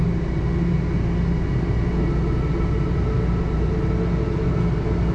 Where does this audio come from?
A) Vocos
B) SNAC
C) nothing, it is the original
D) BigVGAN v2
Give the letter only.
C